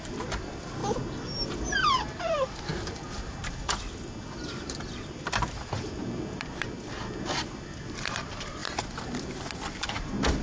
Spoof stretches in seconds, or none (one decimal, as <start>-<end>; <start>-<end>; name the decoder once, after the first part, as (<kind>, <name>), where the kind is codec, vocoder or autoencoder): 0.0-0.8 (vocoder, BigVGAN v2); 1.5-10.4